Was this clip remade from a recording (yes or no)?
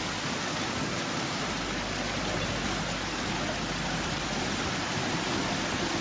no